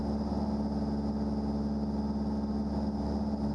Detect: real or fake real